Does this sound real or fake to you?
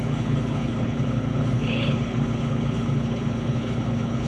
fake